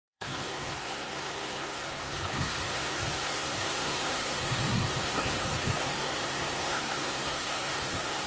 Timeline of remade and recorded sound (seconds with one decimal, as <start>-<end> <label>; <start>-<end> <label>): 0.0-8.3 remade